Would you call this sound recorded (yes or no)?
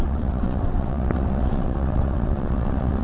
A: no